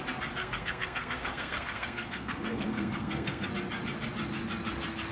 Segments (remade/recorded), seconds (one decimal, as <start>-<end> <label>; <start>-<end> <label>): 0.0-0.4 recorded; 0.4-3.5 remade; 3.5-5.1 recorded